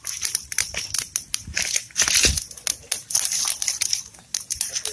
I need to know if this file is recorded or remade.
recorded